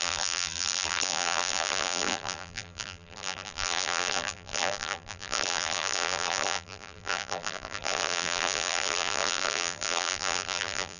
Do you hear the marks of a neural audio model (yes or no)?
yes